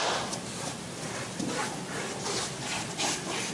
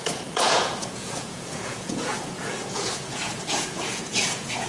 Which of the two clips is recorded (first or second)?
first